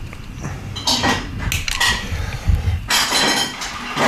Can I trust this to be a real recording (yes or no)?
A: yes